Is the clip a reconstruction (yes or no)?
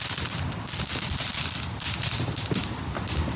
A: no